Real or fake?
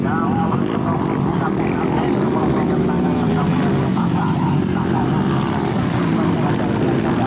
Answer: fake